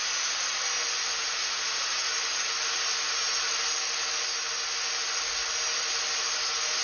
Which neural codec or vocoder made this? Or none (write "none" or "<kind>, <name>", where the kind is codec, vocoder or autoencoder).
none